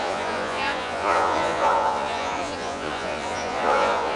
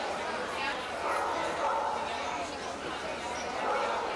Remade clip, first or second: first